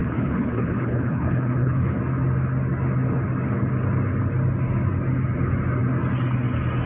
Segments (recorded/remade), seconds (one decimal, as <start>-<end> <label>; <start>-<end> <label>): 0.0-2.0 remade; 2.0-6.9 recorded